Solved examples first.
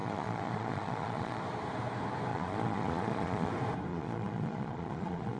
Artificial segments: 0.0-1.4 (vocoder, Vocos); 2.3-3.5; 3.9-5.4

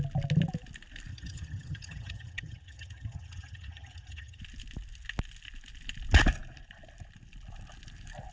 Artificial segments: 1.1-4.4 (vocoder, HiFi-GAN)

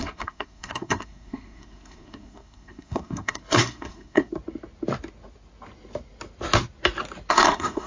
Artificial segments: 0.0-4.3 (codec, SNAC); 7.3-7.9

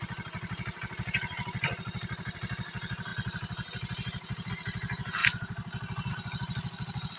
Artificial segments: none

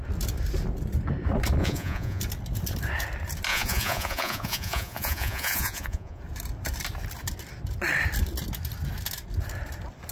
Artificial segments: 1.6-2.2 (vocoder, Vocos); 3.5-6.2

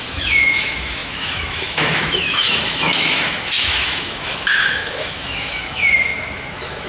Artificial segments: 0.0-6.9 (autoencoder, DAC-VAE)

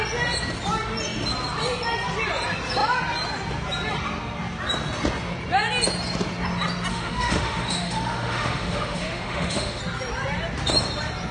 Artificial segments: 6.9-9.8 (autoencoder, DAC-VAE)